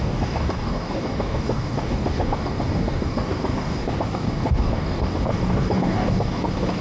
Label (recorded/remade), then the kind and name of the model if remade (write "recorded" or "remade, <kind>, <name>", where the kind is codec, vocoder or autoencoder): remade, codec, DAC